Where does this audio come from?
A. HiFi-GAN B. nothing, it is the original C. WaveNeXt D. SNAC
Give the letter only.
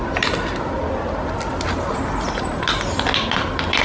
B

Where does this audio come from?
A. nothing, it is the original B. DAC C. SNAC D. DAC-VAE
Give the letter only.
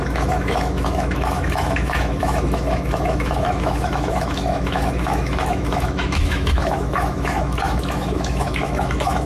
D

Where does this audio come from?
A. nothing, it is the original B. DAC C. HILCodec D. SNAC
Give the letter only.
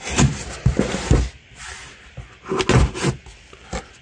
A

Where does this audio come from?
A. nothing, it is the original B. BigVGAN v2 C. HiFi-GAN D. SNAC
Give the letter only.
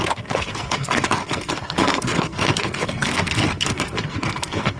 D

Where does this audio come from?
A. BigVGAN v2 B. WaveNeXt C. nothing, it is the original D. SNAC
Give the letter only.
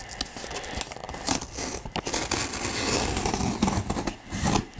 C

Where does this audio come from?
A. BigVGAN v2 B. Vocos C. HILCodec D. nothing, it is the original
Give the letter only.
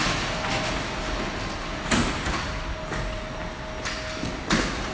D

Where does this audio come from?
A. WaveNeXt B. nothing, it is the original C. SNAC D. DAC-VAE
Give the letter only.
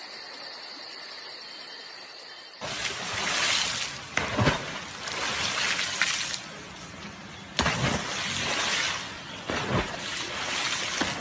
B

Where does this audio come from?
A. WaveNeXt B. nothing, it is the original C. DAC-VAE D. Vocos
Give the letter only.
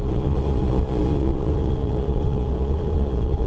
D